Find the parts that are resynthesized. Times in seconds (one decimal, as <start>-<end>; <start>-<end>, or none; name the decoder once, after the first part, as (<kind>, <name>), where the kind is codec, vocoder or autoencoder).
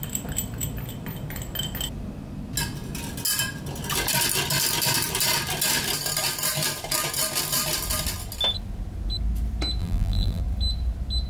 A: 9.8-10.4 (vocoder, BigVGAN v2)